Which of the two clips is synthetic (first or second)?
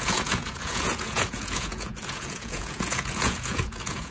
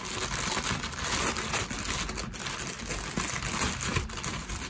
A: first